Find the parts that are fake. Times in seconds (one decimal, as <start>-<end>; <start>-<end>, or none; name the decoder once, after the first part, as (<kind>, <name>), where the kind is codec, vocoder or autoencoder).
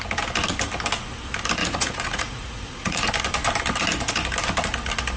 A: 1.6-3.1 (vocoder, Vocos)